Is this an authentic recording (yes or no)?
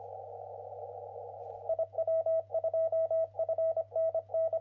yes